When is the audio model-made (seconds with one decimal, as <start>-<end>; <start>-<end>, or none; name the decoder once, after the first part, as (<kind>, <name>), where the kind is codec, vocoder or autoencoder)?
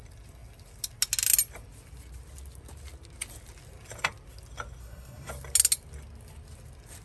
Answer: 4.8-5.3 (codec, SNAC)